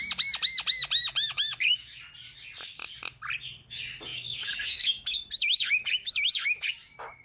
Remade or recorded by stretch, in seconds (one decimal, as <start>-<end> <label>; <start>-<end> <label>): 0.0-1.1 recorded; 1.1-2.0 remade; 2.0-4.1 recorded; 4.1-6.7 remade; 6.7-7.2 recorded